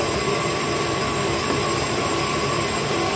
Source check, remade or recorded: remade